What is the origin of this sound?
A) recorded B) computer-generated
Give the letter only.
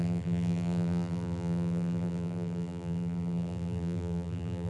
B